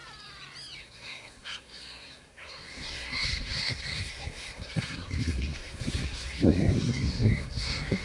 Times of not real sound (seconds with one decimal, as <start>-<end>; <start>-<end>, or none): 0.8-8.0